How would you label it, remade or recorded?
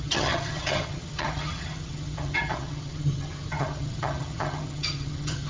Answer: remade